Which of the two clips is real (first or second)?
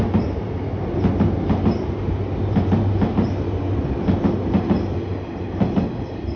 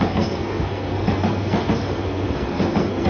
first